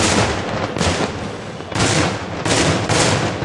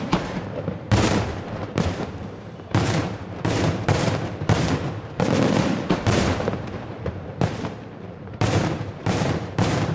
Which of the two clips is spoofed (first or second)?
second